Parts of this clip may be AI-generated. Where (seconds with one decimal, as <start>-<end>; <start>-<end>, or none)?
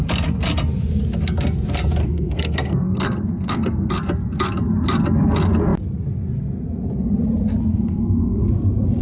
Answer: 2.0-3.9; 7.7-8.4